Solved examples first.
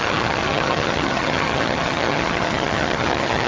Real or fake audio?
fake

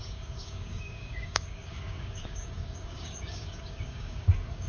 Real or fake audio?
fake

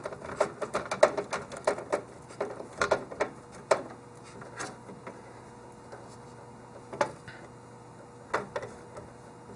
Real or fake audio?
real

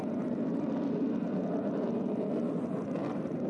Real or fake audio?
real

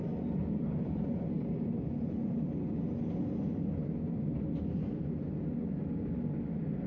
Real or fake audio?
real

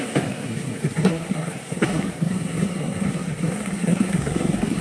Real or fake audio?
fake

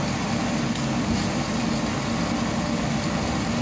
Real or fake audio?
real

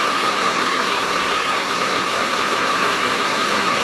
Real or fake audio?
fake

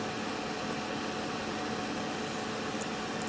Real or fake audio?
real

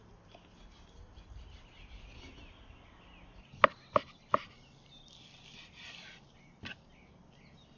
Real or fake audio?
real